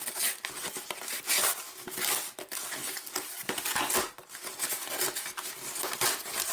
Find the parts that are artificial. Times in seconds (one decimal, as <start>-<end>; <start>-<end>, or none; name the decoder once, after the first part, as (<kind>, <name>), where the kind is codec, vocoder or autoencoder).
none